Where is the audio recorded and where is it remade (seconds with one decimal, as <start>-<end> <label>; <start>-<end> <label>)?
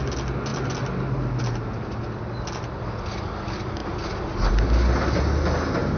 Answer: 0.0-6.0 recorded